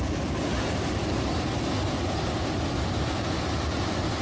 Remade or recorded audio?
recorded